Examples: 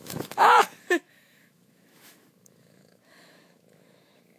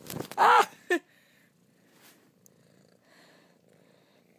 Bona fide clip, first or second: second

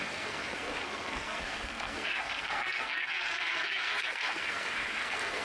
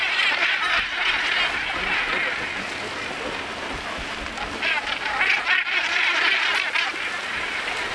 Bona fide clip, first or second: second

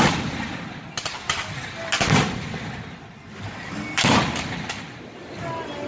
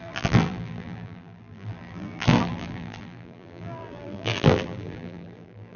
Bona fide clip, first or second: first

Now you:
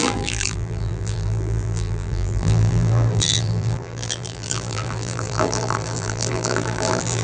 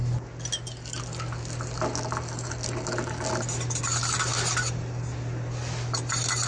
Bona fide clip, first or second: second